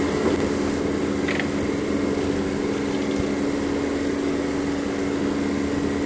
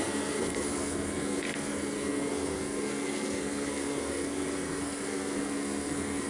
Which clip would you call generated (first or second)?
second